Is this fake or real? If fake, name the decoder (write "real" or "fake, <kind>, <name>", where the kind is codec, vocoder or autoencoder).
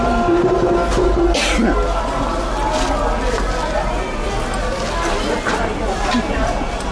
real